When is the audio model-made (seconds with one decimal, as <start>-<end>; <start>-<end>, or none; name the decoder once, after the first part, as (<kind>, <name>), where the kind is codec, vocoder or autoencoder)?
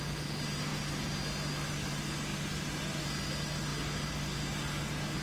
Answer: none